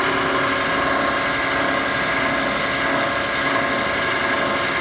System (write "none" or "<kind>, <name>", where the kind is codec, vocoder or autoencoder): none